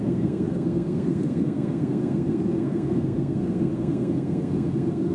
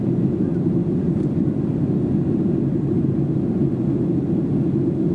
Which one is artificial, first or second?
first